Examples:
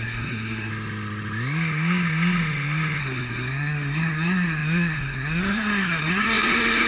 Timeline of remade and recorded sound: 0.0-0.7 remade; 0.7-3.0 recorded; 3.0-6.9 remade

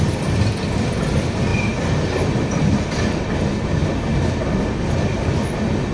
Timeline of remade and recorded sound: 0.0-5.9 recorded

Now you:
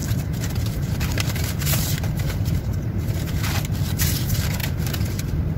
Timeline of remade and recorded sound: 0.0-3.4 remade; 3.4-4.6 recorded; 4.6-5.6 remade

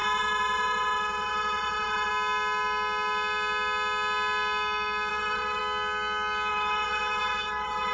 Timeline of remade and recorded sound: 0.0-2.1 remade; 2.1-5.1 recorded; 5.1-5.6 remade; 5.6-6.5 recorded; 6.5-7.9 remade